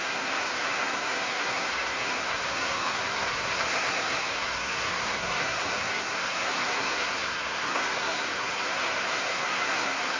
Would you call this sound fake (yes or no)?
yes